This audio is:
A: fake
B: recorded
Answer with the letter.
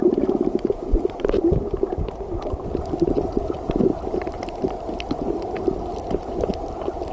B